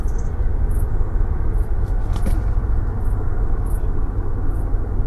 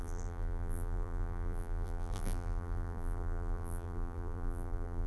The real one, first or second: first